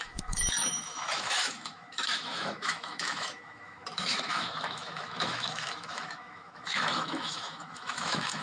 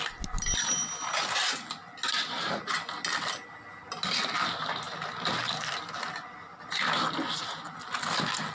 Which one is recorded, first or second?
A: second